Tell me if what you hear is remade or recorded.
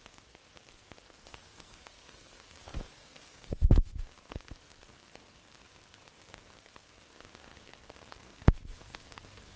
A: remade